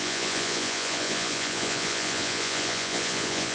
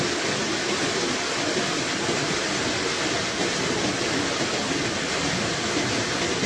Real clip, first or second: second